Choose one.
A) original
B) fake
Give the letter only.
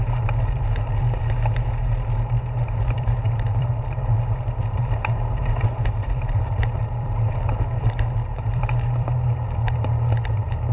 B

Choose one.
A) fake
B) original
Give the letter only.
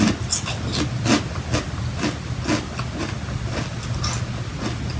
B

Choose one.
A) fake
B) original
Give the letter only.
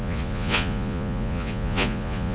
A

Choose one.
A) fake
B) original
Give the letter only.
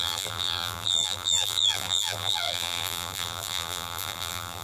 A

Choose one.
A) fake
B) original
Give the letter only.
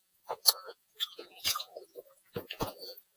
A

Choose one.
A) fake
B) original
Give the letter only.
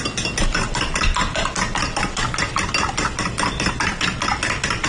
B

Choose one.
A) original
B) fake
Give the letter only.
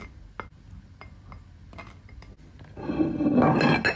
A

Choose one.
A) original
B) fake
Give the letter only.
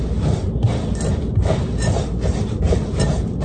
A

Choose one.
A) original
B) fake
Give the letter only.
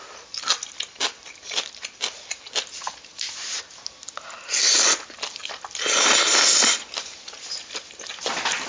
A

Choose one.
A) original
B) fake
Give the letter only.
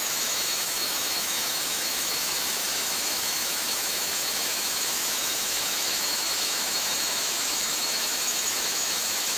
B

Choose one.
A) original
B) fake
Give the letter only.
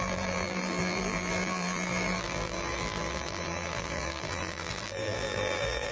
B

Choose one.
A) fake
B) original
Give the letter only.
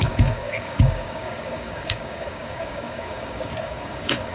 A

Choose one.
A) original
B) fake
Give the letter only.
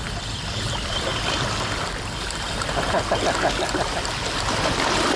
A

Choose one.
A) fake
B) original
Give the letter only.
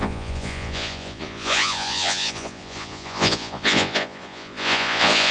A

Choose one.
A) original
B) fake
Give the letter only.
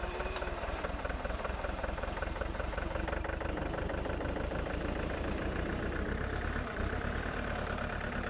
B